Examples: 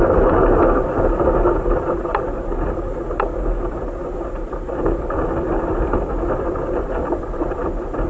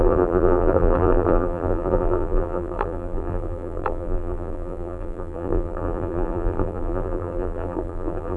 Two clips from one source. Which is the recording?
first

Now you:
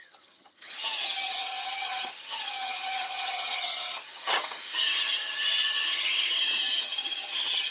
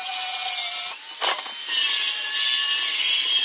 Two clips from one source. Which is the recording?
second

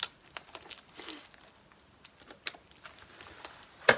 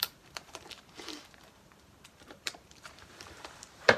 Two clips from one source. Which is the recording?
first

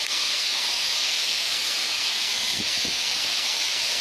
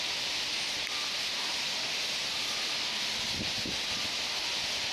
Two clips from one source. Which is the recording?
second